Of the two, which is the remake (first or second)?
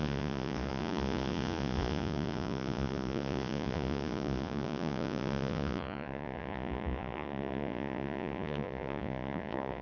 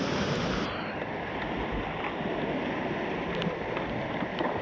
first